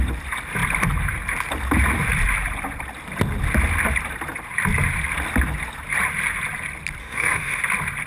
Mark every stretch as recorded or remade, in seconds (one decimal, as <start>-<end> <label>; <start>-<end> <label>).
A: 0.0-7.0 recorded; 7.0-7.6 remade; 7.6-8.1 recorded